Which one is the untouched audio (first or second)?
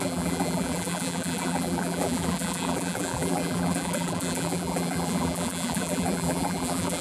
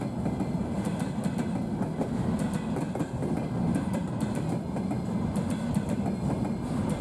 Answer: second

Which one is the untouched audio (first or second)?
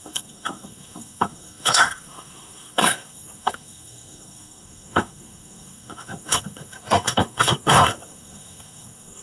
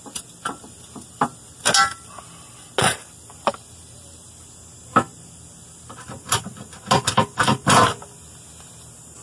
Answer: second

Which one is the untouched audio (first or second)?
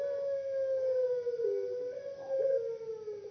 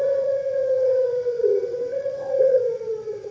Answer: first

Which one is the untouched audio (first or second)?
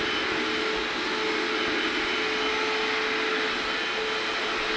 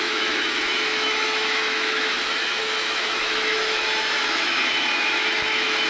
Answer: first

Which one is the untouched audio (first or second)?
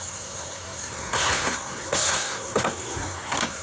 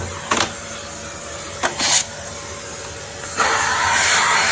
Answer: second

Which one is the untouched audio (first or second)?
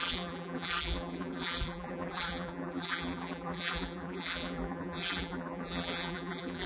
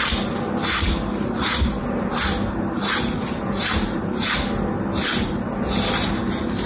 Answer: second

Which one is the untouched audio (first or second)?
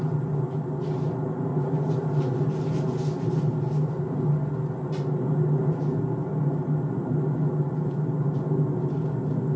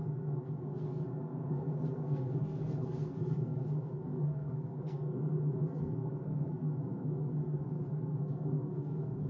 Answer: first